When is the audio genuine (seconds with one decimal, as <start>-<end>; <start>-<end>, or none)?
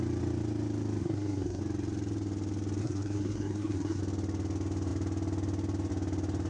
0.0-1.0; 1.6-2.8; 4.0-6.5